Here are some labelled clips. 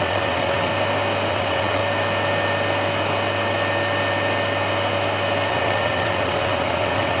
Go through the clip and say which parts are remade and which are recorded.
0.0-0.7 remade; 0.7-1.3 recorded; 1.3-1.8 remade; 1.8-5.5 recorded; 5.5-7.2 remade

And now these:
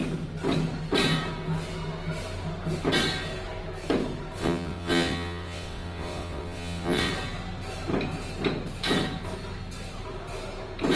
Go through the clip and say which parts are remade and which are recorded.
0.0-4.4 recorded; 4.4-7.1 remade; 7.1-11.0 recorded

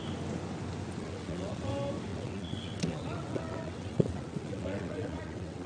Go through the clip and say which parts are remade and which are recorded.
0.0-1.0 recorded; 1.0-1.7 remade; 1.7-2.1 recorded; 2.1-5.7 remade

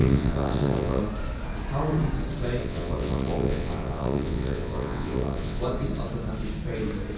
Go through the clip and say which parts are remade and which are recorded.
0.0-1.0 remade; 1.0-2.6 recorded; 2.6-5.6 remade; 5.6-7.2 recorded

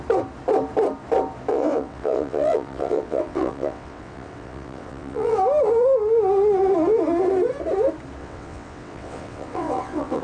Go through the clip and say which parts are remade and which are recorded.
0.0-1.5 recorded; 1.5-5.4 remade; 5.4-8.2 recorded; 8.2-10.2 remade

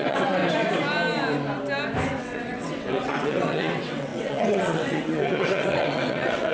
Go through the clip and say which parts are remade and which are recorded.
0.0-0.4 remade; 0.4-2.2 recorded; 2.2-6.5 remade

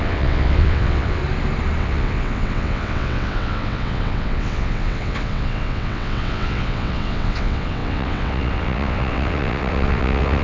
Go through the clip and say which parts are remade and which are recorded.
0.0-1.2 remade; 1.2-1.8 recorded; 1.8-10.4 remade

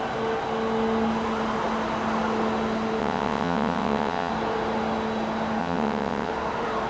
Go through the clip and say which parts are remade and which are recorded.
0.0-3.0 recorded; 3.0-4.3 remade; 4.3-5.6 recorded; 5.6-6.3 remade; 6.3-6.9 recorded